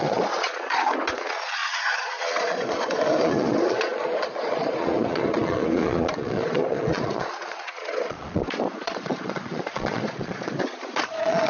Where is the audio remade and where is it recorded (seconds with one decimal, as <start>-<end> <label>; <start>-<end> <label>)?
0.0-11.5 remade